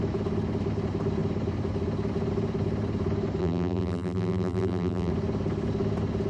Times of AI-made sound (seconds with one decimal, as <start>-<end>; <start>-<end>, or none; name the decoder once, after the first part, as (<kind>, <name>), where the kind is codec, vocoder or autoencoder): 3.4-5.1 (vocoder, BigVGAN v2)